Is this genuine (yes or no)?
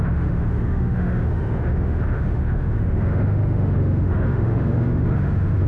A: no